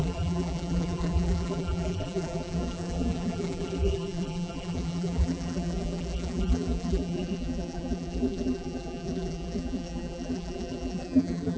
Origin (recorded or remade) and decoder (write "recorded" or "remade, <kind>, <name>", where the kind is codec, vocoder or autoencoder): remade, vocoder, BigVGAN v2